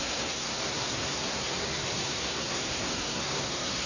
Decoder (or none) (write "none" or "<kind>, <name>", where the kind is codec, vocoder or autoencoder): codec, SNAC